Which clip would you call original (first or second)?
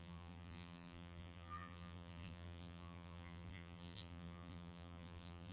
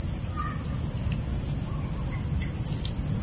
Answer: second